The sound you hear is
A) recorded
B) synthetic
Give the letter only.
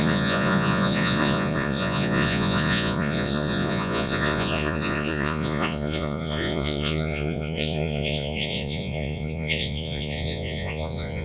B